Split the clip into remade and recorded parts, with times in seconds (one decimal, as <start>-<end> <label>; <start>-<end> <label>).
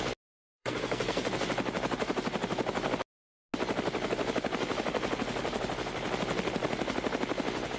0.0-0.4 recorded; 0.4-1.3 remade; 1.3-7.8 recorded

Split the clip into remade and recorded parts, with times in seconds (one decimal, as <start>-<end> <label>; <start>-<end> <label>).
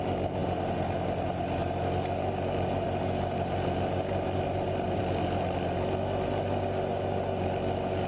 0.0-8.1 recorded